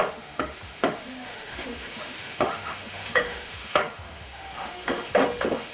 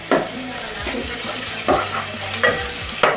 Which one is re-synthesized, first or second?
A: first